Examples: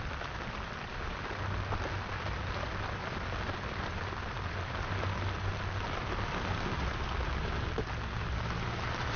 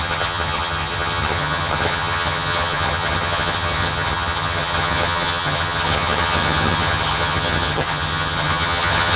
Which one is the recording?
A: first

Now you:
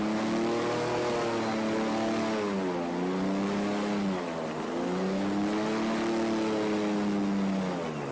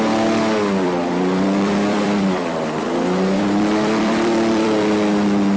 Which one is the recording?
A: first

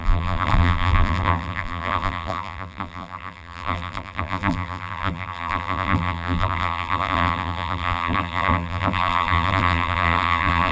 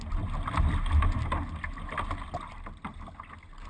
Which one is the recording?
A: second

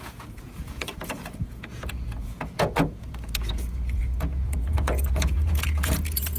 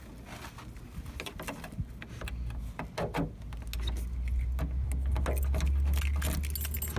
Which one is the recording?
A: second